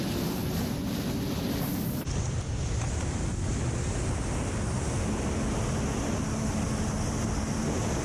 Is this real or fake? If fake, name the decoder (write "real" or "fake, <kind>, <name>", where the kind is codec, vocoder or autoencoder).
real